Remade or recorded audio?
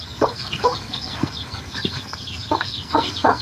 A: remade